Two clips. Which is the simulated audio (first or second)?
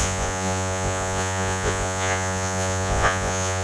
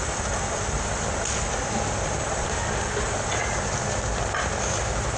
first